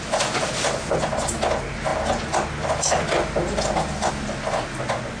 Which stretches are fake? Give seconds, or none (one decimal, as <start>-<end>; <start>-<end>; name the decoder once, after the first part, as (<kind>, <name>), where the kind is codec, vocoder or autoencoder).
none